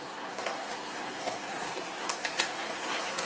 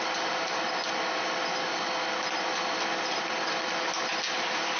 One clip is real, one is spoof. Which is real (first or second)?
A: second